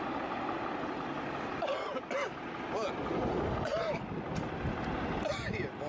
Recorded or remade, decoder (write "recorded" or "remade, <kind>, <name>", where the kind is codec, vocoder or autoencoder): recorded